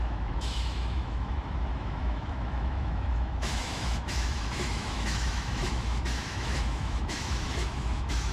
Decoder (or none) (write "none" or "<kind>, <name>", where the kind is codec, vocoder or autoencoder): autoencoder, DAC-VAE